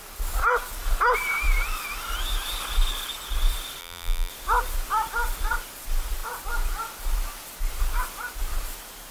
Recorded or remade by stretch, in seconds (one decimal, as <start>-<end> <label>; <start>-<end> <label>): 0.0-3.8 recorded; 3.8-4.3 remade; 4.3-9.1 recorded